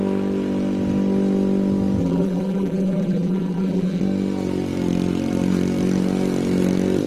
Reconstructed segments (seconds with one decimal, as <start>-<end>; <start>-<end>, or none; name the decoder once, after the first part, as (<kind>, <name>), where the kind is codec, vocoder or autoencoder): 2.0-4.0 (vocoder, BigVGAN v2)